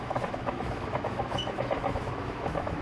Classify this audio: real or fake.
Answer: fake